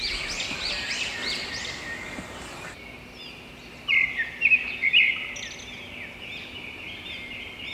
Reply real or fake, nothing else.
real